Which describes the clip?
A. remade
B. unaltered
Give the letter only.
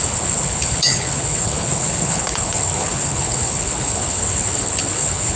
A